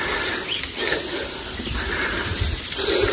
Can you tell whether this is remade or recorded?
recorded